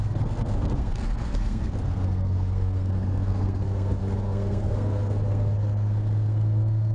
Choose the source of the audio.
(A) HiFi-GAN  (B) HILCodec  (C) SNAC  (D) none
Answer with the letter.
C